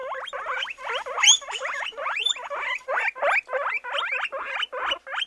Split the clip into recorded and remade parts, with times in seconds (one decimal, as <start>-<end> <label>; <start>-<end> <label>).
0.0-3.0 remade; 3.0-5.3 recorded